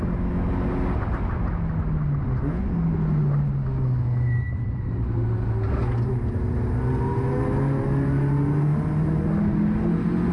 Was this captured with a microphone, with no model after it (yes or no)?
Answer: yes